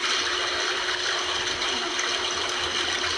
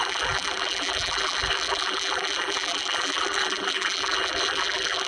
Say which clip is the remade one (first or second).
second